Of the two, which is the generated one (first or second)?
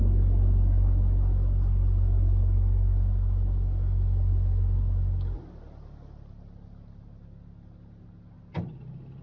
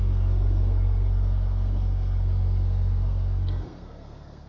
second